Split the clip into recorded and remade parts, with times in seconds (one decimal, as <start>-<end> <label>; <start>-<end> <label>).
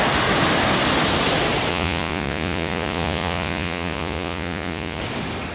0.0-1.7 recorded; 1.7-5.0 remade; 5.0-5.5 recorded